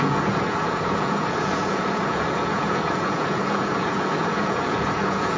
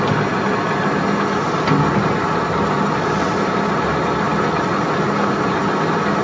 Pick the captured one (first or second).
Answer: second